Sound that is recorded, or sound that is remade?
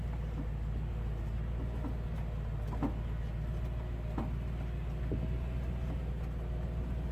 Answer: recorded